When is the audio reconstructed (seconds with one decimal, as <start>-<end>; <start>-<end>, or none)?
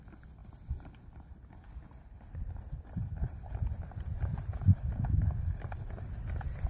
0.4-0.9; 4.3-6.7